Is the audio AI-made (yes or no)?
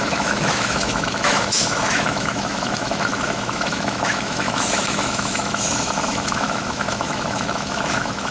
yes